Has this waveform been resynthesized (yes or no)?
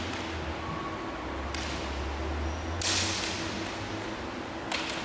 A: no